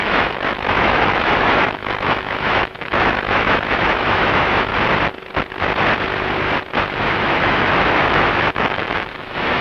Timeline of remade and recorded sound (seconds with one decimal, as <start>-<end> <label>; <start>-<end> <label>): 0.0-4.7 remade; 4.7-7.0 recorded; 7.0-9.6 remade